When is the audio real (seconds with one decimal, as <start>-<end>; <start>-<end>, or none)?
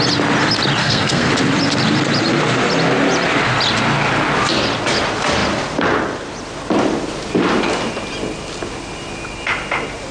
0.0-0.8; 1.3-10.1